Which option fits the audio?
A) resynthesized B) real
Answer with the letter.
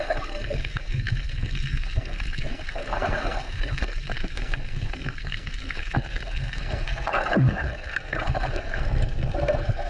A